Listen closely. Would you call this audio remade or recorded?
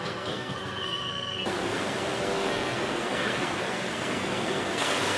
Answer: remade